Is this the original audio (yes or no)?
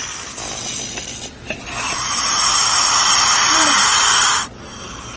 yes